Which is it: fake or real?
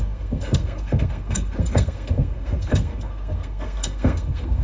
fake